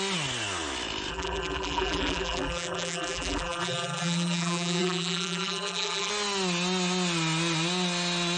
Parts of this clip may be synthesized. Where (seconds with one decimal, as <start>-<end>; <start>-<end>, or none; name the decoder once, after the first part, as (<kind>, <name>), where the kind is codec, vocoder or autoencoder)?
1.1-6.1 (vocoder, BigVGAN v2)